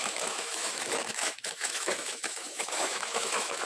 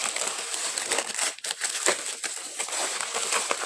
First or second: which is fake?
first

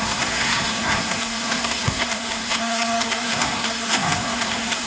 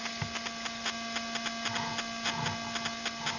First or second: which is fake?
first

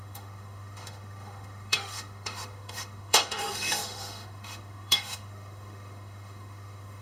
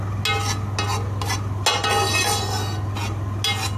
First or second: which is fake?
first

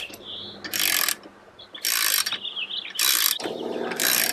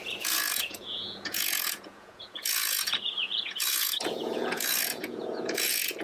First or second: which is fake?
second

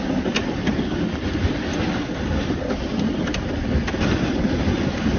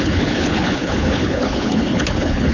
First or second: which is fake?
second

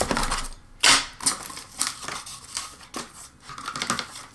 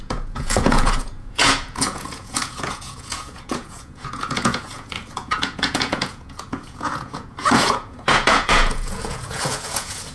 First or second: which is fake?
second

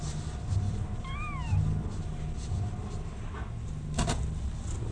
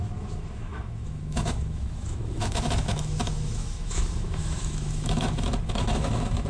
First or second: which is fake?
second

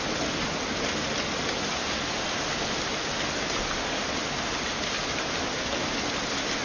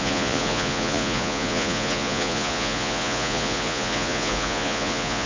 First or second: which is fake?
second